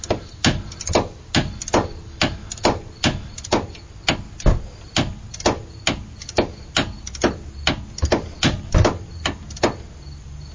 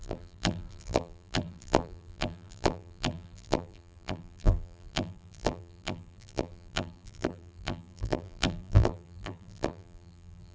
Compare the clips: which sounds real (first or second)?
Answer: first